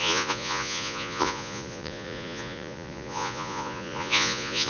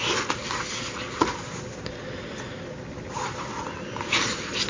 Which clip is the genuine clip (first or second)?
second